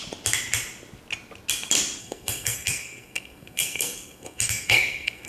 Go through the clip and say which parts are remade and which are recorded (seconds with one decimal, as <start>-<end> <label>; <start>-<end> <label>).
0.0-2.0 recorded; 2.0-5.3 remade